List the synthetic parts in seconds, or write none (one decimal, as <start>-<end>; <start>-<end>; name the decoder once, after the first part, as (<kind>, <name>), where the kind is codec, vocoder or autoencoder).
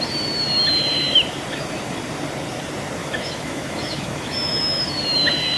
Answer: 3.0-4.8 (autoencoder, DAC-VAE)